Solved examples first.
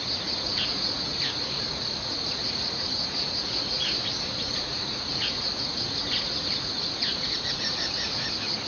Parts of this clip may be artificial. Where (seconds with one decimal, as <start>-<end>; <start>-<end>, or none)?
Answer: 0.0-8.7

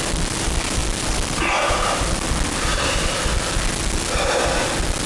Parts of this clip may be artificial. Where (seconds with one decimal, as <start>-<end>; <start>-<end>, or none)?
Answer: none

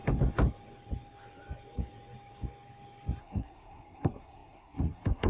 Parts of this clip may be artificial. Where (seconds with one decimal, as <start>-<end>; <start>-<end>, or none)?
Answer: 3.2-5.3

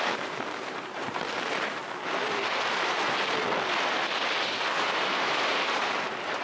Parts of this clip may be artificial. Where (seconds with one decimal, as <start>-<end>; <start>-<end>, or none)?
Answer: 0.0-1.8; 5.1-6.4

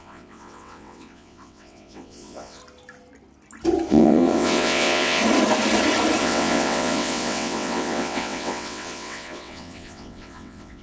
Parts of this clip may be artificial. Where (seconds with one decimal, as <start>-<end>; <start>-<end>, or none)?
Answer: 0.0-2.6; 3.9-5.2; 6.2-10.8